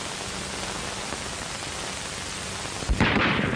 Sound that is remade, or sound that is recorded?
recorded